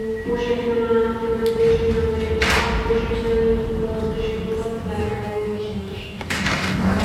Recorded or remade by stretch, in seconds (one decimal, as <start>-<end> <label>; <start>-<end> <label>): 0.0-5.0 recorded; 5.0-7.0 remade